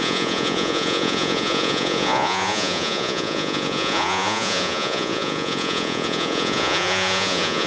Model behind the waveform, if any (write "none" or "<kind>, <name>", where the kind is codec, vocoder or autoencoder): vocoder, Vocos